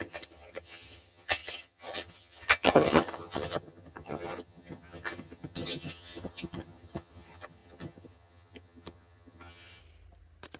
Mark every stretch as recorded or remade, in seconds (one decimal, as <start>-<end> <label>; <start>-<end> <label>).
0.0-9.8 remade; 9.8-10.6 recorded